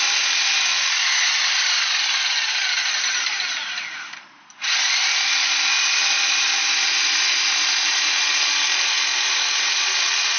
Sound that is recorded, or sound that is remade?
recorded